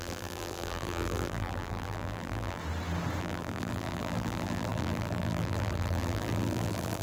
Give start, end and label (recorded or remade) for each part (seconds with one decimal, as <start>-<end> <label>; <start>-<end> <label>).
0.0-2.6 remade; 2.6-3.2 recorded; 3.2-7.0 remade